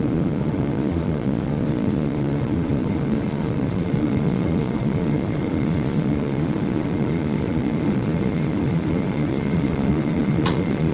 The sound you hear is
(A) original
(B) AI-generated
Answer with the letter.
B